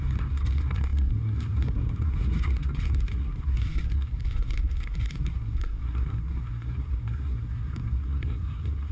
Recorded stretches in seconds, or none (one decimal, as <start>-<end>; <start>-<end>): none